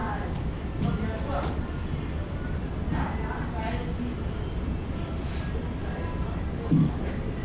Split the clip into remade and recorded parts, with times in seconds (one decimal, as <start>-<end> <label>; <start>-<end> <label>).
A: 0.0-7.4 recorded